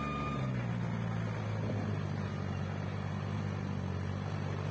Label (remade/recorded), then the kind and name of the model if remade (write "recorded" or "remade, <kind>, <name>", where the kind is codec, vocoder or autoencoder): recorded